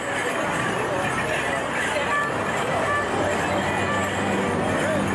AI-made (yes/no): no